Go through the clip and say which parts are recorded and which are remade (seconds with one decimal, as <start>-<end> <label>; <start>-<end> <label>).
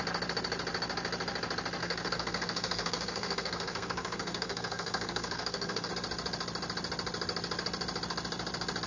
0.0-1.8 recorded; 1.8-5.9 remade; 5.9-8.9 recorded